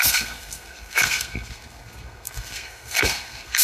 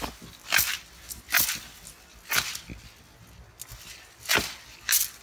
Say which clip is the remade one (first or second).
first